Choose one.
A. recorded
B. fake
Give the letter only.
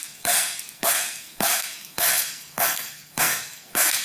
B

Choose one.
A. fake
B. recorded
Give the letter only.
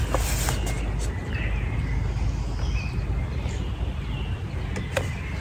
B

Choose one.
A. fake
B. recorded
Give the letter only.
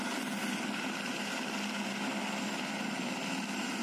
B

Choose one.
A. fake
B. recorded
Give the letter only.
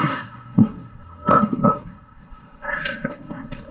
A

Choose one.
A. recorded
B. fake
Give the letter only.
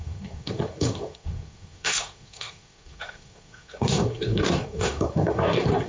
B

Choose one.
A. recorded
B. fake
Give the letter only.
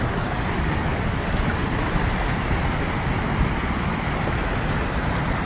A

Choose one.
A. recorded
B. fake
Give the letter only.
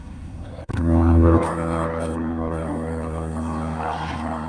B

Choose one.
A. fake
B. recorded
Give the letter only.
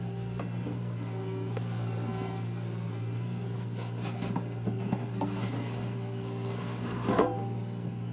A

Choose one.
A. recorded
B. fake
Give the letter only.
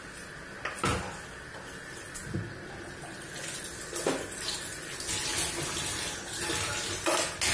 A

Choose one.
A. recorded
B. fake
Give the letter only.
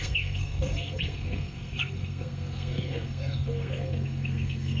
B